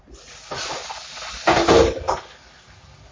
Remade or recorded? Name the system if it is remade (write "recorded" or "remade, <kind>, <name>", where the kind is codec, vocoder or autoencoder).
recorded